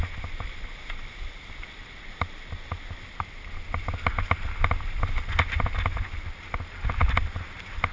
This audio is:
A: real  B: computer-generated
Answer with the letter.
A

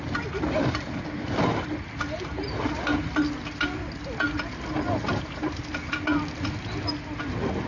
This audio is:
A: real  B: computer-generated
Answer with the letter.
A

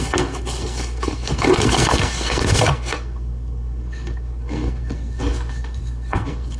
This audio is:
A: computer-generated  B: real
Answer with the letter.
A